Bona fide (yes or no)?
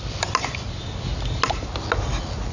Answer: yes